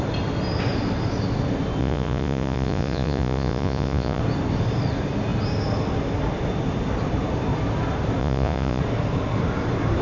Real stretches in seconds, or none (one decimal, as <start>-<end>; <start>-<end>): 0.0-1.8; 4.2-8.2; 8.8-10.0